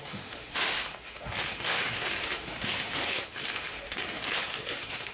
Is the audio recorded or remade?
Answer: remade